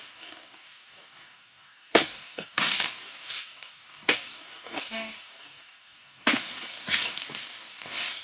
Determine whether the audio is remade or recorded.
remade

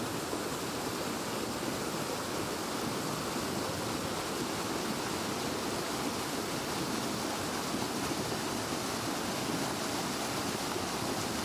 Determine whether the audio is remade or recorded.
recorded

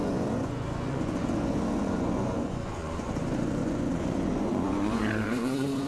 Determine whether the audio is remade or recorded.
remade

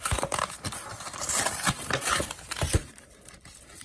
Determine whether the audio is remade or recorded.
remade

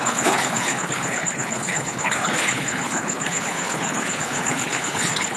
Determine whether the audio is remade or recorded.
remade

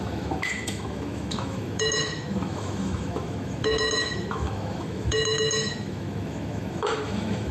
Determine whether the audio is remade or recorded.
remade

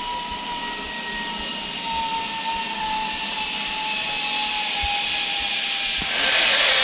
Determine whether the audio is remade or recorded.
recorded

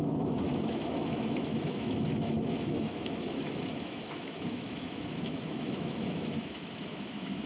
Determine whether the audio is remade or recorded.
remade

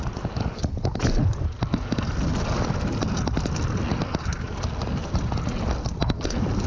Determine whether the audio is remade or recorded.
recorded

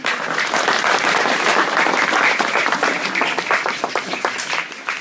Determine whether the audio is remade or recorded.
recorded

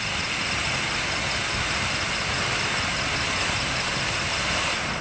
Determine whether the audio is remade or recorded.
recorded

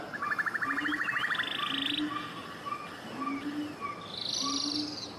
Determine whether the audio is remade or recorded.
recorded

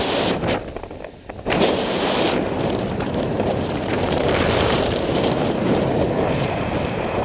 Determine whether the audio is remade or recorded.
remade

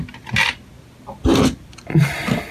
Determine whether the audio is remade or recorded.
recorded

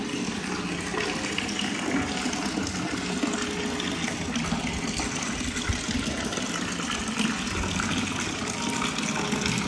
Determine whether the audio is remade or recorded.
recorded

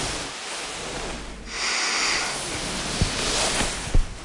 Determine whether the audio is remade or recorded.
recorded